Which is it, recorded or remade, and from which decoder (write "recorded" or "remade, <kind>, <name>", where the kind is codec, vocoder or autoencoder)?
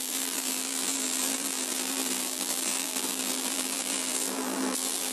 remade, vocoder, BigVGAN v2